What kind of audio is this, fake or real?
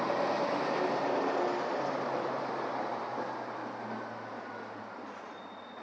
real